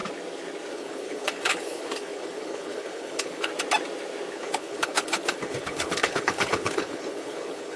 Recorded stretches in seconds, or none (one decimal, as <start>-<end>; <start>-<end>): 0.0-0.7; 3.5-4.3